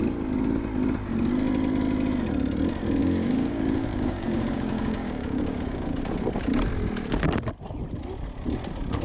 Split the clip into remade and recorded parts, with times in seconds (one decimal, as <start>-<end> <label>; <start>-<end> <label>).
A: 0.0-3.0 recorded; 3.0-6.0 remade; 6.0-9.0 recorded